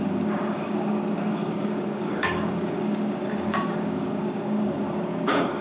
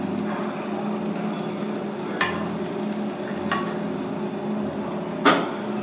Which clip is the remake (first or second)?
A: first